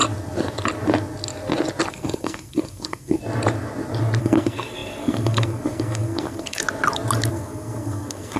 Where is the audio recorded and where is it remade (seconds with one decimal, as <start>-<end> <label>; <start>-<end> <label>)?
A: 0.0-1.9 recorded; 1.9-3.2 remade; 3.2-4.2 recorded; 4.2-6.6 remade; 6.6-7.3 recorded; 7.3-8.4 remade